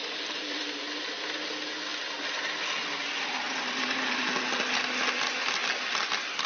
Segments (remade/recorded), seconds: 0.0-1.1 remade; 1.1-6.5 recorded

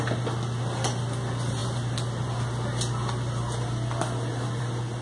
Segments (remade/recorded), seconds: 0.0-5.0 recorded

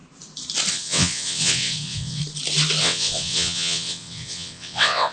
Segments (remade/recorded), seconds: 0.0-0.7 recorded; 0.7-2.2 remade; 2.2-2.8 recorded; 2.8-5.1 remade

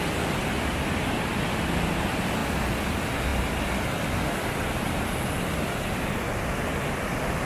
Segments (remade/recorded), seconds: 0.0-7.5 recorded